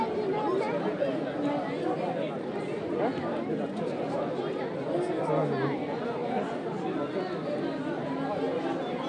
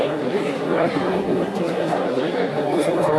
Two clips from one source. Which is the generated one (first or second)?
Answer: second